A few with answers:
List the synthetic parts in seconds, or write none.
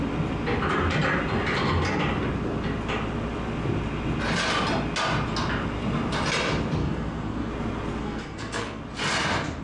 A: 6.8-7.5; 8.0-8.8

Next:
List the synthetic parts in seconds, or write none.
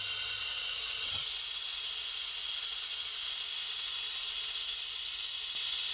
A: none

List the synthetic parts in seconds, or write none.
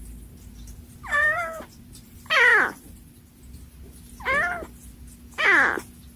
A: 1.1-1.6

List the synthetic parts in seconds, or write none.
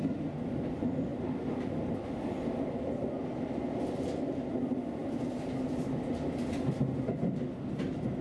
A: none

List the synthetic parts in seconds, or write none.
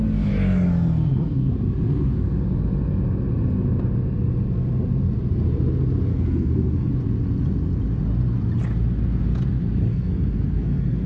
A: 6.1-6.9; 9.9-11.1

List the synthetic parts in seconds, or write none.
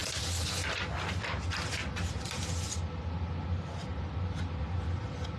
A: none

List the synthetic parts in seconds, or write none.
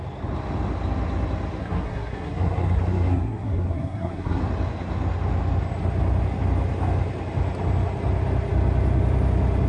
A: 1.6-4.4